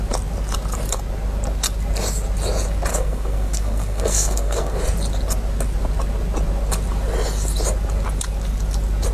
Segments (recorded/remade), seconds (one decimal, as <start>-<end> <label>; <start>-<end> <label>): 0.0-2.9 recorded; 2.9-4.8 remade; 4.8-9.1 recorded